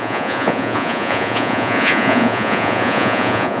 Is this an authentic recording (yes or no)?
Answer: no